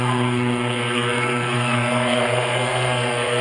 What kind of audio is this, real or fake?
fake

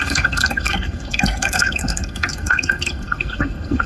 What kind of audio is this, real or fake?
fake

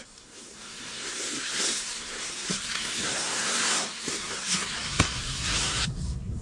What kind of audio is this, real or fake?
fake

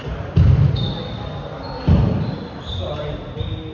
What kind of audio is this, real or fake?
real